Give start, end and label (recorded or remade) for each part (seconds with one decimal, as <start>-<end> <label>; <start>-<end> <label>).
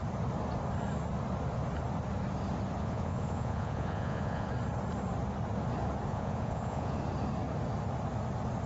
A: 0.0-2.8 recorded; 2.8-4.5 remade; 4.5-6.1 recorded; 6.1-7.0 remade; 7.0-8.7 recorded